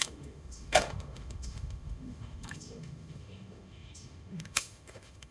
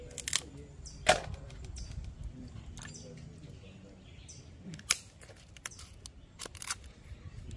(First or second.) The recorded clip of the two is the second